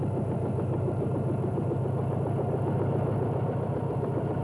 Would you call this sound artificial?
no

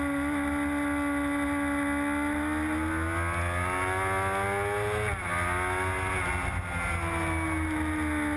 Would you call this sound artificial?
no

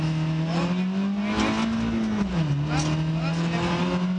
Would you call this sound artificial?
no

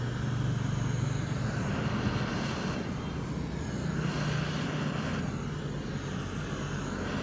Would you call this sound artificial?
no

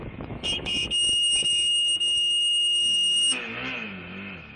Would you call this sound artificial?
yes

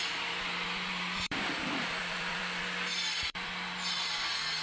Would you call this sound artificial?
yes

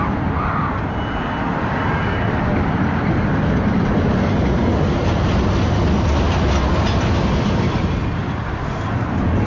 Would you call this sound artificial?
no